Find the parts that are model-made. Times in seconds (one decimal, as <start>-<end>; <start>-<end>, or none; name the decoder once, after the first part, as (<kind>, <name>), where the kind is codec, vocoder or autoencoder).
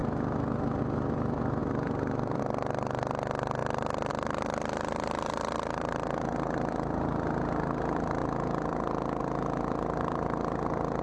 1.6-2.4 (vocoder, BigVGAN v2)